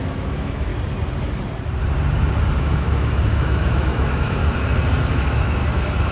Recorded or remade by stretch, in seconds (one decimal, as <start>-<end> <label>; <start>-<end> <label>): 0.0-0.7 remade; 0.7-2.6 recorded; 2.6-4.4 remade; 4.4-5.1 recorded; 5.1-5.6 remade; 5.6-6.1 recorded